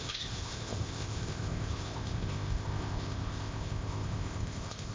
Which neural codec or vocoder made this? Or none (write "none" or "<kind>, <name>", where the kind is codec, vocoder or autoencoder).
codec, ZipCodec